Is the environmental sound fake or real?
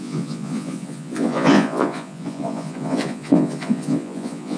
fake